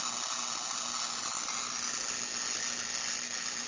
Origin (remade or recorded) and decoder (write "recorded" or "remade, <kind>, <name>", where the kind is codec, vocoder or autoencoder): recorded